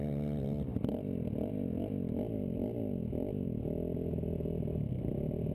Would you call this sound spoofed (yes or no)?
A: no